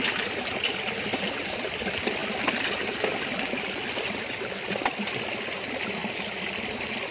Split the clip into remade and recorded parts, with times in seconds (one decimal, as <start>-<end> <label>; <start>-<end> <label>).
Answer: 0.0-7.1 recorded